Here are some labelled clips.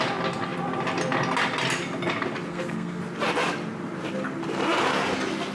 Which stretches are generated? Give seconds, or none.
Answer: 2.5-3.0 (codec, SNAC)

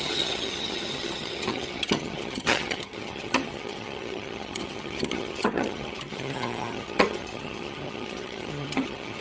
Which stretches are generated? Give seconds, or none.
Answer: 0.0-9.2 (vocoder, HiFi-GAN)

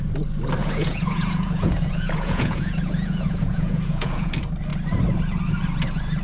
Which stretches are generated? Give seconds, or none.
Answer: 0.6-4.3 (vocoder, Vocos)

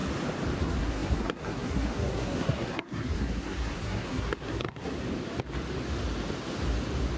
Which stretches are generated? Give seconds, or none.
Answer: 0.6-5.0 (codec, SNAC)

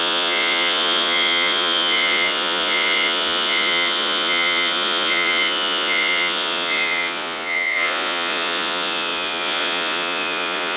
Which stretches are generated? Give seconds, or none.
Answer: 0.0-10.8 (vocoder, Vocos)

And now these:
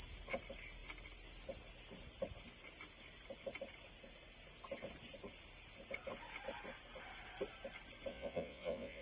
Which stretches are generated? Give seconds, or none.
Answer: 8.1-9.0 (vocoder, Vocos)